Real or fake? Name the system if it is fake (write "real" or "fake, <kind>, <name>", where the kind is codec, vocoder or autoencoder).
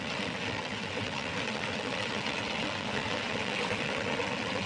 fake, vocoder, WaveNeXt